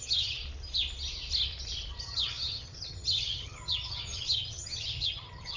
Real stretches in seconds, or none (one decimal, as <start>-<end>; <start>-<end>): 0.4-2.0